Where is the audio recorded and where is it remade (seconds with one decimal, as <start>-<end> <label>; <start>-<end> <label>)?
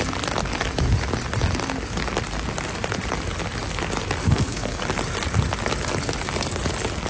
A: 0.0-4.2 recorded; 4.2-4.8 remade; 4.8-7.1 recorded